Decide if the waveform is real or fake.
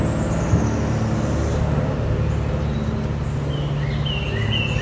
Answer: real